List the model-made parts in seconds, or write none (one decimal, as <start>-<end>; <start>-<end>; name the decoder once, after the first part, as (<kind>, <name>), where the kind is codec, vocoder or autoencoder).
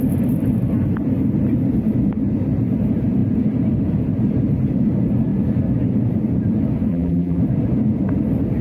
6.9-7.4 (vocoder, BigVGAN v2)